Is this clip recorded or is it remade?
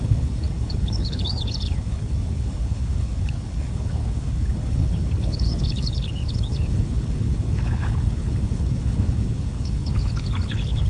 remade